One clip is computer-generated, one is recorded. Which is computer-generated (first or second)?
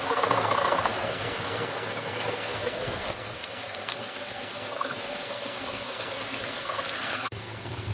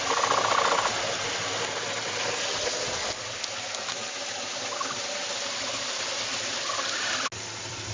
first